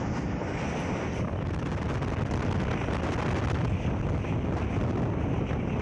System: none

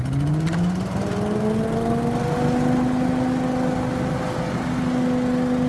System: none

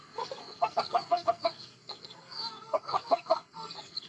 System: codec, SNAC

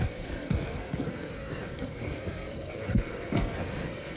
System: codec, SNAC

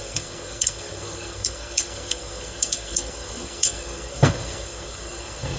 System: codec, SNAC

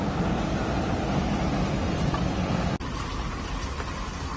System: none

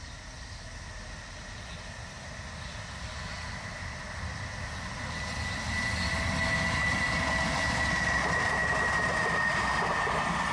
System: none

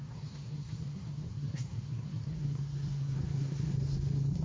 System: codec, SNAC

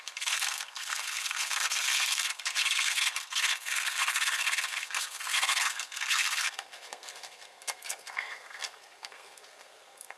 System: codec, SNAC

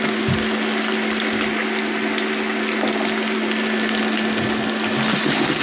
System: none